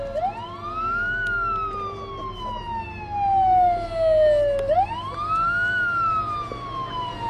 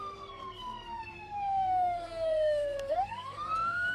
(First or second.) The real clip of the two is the first